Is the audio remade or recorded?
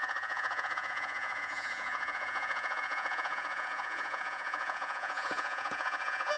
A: remade